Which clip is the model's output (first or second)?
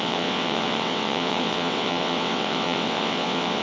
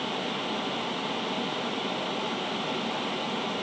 first